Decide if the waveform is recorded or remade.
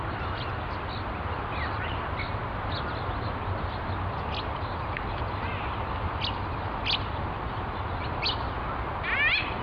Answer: recorded